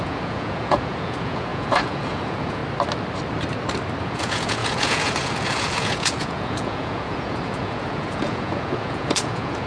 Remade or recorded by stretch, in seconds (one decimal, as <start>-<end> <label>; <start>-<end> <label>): 0.0-2.6 remade; 2.6-4.0 recorded; 4.0-9.7 remade